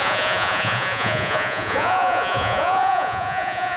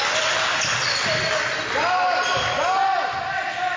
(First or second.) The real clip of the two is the second